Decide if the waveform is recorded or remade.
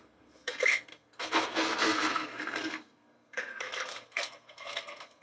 remade